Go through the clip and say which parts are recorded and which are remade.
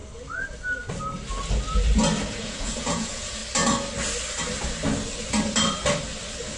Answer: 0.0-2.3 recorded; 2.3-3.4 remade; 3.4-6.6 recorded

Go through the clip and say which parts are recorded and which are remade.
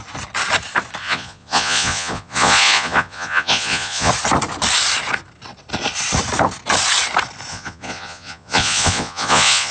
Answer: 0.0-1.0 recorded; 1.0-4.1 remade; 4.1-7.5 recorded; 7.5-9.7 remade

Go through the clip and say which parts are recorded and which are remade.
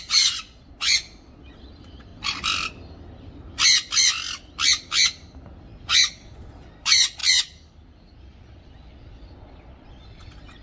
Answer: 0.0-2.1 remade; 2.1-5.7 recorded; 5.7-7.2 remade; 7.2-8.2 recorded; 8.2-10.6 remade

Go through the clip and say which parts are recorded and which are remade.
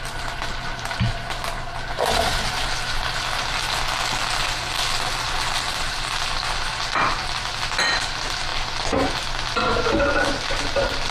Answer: 0.0-11.1 recorded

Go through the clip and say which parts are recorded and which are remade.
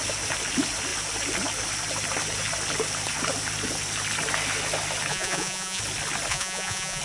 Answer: 0.0-5.1 recorded; 5.1-5.8 remade; 5.8-6.3 recorded; 6.3-7.0 remade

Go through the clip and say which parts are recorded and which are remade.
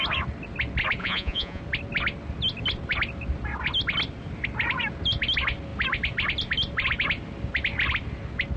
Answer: 0.0-1.0 recorded; 1.0-1.6 remade; 1.6-8.6 recorded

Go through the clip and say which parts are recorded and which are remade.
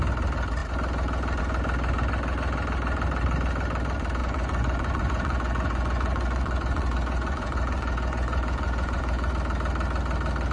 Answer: 0.0-4.2 recorded; 4.2-9.3 remade; 9.3-10.5 recorded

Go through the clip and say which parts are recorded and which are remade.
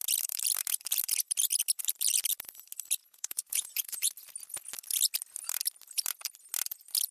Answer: 0.0-3.0 recorded; 3.0-4.1 remade; 4.1-7.1 recorded